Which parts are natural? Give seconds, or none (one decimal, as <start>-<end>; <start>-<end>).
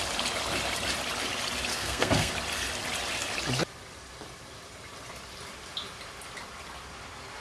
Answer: 0.0-1.7; 2.3-7.4